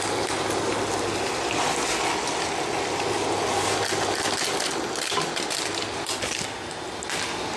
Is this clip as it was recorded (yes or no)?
yes